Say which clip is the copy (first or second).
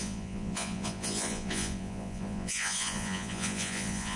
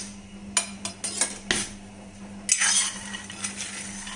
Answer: first